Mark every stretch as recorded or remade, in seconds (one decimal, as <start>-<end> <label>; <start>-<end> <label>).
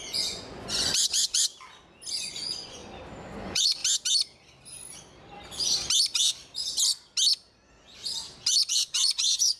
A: 0.0-1.5 remade; 1.5-2.2 recorded; 2.2-2.8 remade; 2.8-3.4 recorded; 3.4-3.8 remade; 3.8-8.7 recorded; 8.7-9.6 remade